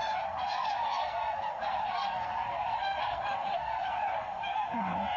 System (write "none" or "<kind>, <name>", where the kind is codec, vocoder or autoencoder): codec, SNAC